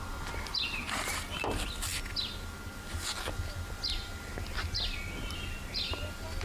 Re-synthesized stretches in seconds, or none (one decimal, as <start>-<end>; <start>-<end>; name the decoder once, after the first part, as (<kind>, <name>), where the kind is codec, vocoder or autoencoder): none